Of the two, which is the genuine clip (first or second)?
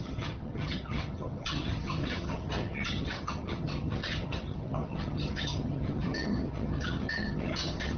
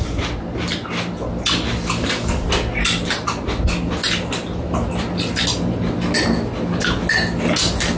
second